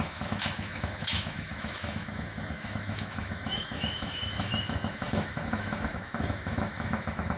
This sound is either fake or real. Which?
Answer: fake